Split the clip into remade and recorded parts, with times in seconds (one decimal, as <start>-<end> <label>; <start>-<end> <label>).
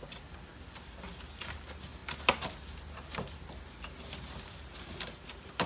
0.0-5.7 recorded